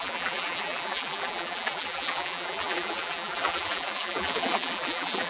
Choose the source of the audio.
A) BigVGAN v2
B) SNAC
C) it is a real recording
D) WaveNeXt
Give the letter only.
A